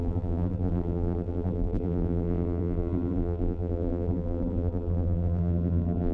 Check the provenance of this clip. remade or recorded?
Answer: remade